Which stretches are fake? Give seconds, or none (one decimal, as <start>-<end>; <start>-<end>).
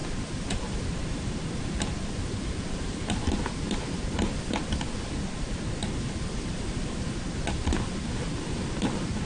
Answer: none